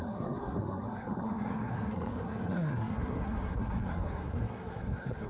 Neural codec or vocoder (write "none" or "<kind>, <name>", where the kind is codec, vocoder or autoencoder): codec, SNAC